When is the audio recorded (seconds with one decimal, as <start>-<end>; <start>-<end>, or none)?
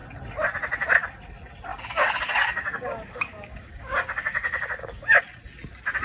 0.0-1.7; 5.2-6.0